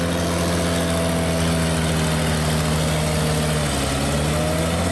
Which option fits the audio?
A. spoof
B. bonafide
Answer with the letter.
B